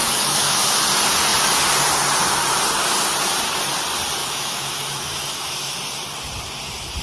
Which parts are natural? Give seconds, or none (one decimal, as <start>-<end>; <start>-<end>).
0.7-4.2; 5.8-7.0

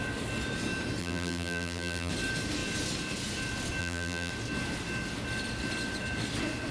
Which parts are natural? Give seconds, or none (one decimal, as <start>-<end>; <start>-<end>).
0.0-1.0; 2.1-3.8; 4.3-6.7

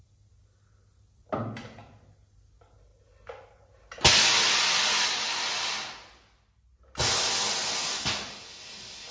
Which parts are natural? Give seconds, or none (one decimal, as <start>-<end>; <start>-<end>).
0.0-9.1

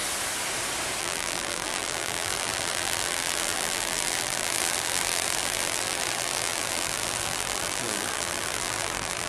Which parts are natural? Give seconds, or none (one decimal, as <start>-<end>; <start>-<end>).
0.0-1.0

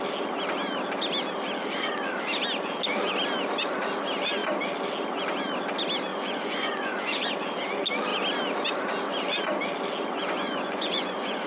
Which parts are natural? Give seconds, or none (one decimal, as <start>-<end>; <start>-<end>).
0.0-6.1; 7.3-10.2